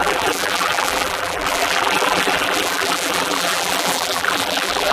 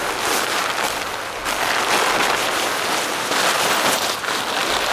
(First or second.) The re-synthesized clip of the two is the first